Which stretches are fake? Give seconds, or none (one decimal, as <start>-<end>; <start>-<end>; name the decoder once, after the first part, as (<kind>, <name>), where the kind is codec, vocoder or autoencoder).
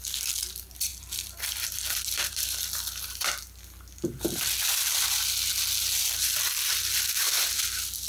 0.9-4.1 (vocoder, BigVGAN v2)